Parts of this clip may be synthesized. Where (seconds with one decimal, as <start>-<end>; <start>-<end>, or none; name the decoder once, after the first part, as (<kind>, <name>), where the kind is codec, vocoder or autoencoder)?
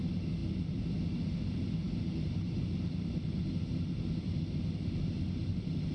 none